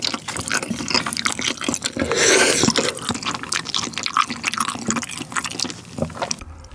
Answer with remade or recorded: recorded